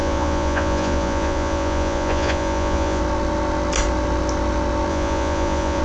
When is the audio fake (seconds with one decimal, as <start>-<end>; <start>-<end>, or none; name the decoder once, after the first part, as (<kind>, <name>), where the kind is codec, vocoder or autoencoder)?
0.0-3.0 (vocoder, Vocos); 4.9-5.8